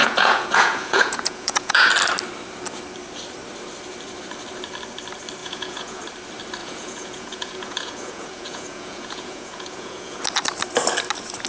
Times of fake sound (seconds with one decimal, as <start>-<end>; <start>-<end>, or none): 0.0-1.9; 5.4-6.0; 6.6-10.2